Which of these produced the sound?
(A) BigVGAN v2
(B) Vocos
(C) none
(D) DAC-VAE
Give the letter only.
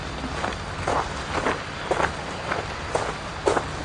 C